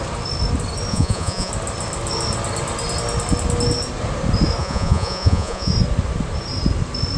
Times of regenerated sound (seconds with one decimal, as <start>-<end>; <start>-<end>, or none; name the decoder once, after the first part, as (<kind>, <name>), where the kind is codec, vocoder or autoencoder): 0.9-1.5 (vocoder, Vocos); 4.6-5.7

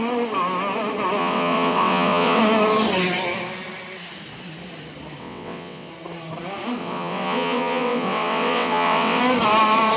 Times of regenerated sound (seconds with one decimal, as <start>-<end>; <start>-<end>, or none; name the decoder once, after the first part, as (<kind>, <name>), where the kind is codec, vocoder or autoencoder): 1.2-2.4 (vocoder, WaveNeXt); 5.2-5.9; 6.8-9.2

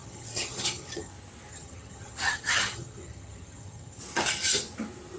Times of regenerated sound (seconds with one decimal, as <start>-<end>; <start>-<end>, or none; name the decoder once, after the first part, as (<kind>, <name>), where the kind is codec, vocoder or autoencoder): 0.0-1.1 (vocoder, HiFi-GAN); 1.5-4.0

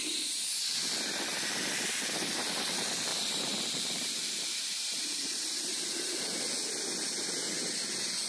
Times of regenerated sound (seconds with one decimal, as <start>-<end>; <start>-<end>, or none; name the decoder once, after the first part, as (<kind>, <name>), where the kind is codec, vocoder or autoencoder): 1.3-1.9 (vocoder, BigVGAN v2); 3.1-6.2